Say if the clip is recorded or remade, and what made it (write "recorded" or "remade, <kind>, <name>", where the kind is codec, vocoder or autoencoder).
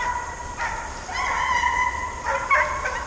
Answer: recorded